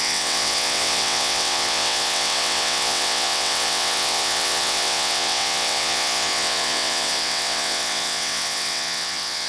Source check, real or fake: fake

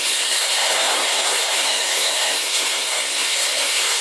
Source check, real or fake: fake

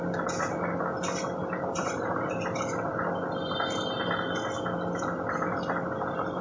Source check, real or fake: fake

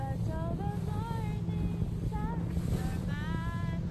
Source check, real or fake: real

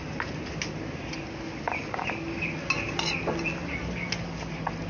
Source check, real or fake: real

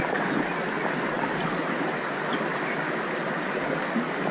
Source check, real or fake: real